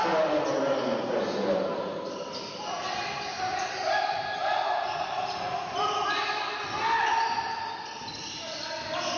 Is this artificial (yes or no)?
no